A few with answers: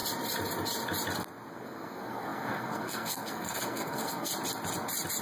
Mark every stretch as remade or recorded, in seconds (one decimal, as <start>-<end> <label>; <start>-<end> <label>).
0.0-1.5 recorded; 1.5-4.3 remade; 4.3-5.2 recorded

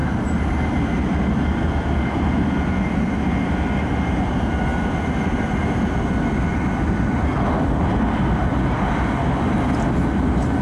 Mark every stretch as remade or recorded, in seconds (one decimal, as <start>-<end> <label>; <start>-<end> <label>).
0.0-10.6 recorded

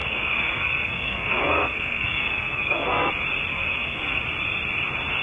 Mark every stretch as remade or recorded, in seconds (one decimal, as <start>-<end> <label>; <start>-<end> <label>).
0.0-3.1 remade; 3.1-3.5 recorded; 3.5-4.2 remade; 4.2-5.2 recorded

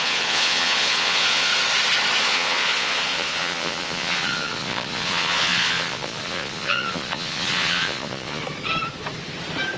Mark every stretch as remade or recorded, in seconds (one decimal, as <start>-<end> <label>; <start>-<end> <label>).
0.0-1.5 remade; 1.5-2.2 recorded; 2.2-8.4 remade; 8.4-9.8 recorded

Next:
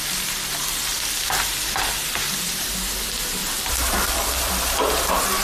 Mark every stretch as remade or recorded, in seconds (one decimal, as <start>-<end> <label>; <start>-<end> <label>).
0.0-3.4 recorded; 3.4-4.5 remade; 4.5-5.4 recorded